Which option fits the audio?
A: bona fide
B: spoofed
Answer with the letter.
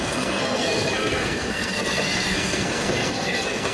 B